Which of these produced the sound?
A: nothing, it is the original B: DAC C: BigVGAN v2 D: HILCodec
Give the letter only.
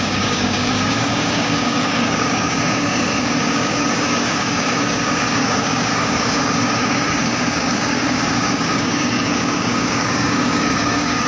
B